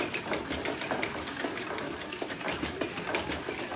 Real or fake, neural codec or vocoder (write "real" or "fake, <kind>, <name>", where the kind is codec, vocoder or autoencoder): real